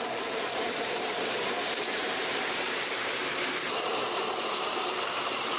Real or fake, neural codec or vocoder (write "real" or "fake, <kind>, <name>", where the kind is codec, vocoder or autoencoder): fake, vocoder, BigVGAN v2